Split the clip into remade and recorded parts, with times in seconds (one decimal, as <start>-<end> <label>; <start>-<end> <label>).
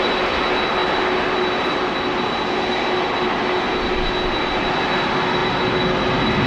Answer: 0.0-6.5 recorded